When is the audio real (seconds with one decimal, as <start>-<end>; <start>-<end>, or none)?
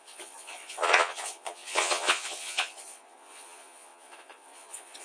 none